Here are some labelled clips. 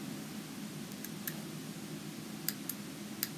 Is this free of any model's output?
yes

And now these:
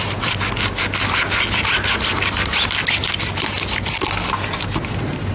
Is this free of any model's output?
yes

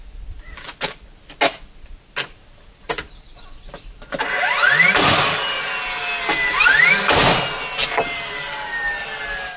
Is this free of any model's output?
yes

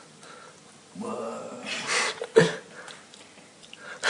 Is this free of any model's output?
no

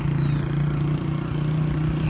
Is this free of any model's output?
yes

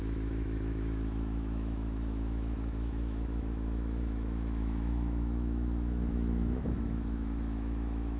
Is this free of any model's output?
no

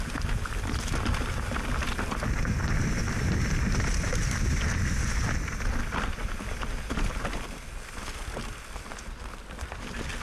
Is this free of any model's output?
yes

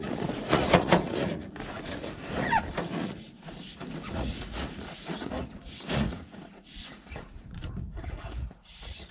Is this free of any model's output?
no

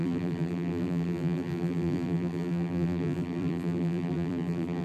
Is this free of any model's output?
no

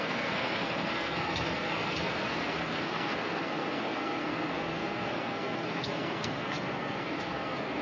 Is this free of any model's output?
no